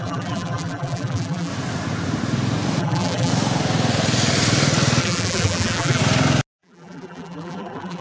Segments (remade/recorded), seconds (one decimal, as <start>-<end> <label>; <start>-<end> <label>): 0.0-1.5 remade; 1.5-2.8 recorded; 2.8-3.3 remade; 3.3-5.0 recorded; 5.0-6.0 remade; 6.0-6.6 recorded; 6.6-8.0 remade